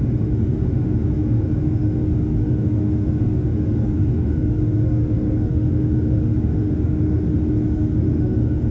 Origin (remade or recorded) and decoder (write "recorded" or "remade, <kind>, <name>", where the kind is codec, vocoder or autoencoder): remade, autoencoder, DAC-VAE